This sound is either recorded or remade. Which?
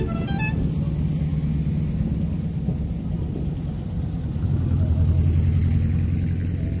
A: recorded